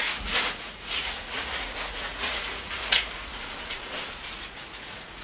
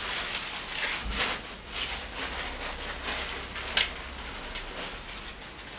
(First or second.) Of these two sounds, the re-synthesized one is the first